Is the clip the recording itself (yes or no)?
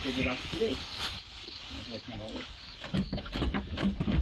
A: no